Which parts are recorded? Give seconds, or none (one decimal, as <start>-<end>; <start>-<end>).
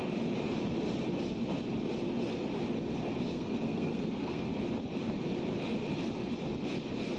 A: 0.0-3.3; 4.5-7.2